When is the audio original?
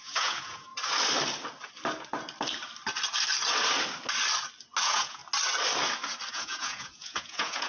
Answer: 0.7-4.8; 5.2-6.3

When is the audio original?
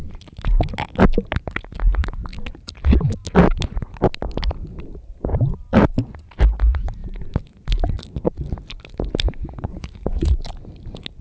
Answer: 0.0-9.7; 10.3-11.2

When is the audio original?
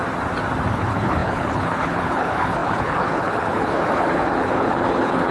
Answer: 0.0-0.7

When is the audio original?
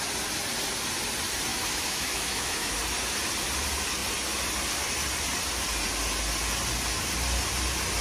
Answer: 0.0-1.5; 2.8-8.0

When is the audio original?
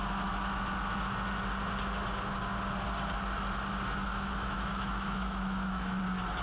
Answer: 0.0-4.1; 6.0-6.4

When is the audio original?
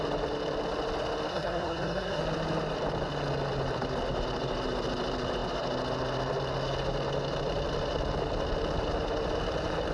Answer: 0.0-1.3; 2.2-9.9